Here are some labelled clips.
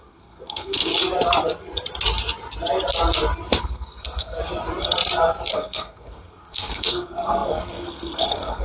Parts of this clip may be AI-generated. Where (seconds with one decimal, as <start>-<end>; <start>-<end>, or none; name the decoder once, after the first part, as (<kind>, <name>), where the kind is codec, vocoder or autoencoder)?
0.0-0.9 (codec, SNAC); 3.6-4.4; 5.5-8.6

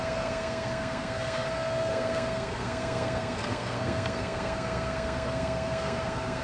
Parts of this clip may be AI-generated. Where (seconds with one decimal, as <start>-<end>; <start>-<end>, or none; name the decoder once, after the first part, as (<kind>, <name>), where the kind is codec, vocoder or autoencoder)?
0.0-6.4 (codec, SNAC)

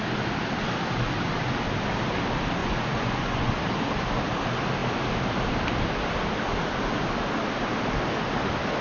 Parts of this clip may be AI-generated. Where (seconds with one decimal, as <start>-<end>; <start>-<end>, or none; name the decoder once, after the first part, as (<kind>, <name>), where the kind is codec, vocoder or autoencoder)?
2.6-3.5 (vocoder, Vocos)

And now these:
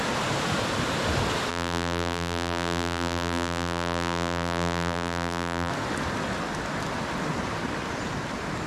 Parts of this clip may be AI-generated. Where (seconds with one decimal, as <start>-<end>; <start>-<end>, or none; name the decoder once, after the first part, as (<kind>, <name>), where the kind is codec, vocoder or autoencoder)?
1.5-5.7 (vocoder, BigVGAN v2)

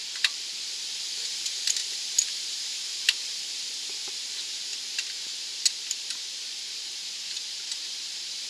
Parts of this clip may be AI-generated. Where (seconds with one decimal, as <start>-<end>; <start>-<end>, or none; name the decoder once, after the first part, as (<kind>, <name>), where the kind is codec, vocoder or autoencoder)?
0.0-4.7 (vocoder, BigVGAN v2); 6.0-6.9; 7.9-8.5